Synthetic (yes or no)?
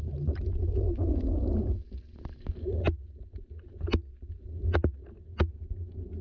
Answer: no